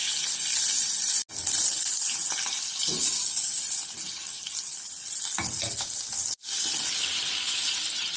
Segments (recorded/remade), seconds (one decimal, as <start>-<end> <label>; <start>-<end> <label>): 0.0-3.0 recorded; 3.0-3.6 remade; 3.6-8.2 recorded